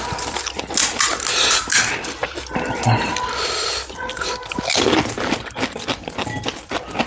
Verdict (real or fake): real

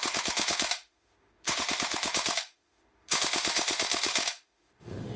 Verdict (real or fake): fake